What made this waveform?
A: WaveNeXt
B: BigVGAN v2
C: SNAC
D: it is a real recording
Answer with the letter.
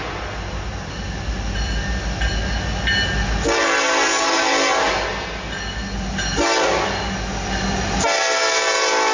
D